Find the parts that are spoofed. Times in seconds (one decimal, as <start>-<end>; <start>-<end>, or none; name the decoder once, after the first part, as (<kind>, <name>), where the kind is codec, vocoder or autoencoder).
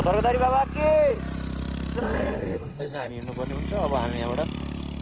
2.0-3.1 (codec, SNAC)